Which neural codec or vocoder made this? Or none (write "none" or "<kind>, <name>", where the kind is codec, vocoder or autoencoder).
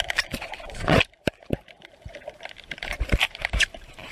vocoder, BigVGAN v2